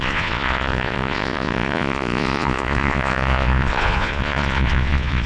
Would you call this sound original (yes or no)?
no